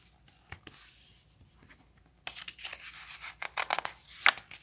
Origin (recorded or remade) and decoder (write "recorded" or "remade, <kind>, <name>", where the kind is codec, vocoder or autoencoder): recorded